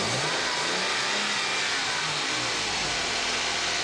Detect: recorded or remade recorded